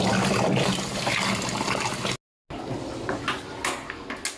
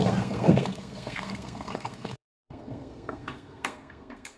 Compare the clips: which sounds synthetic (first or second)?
second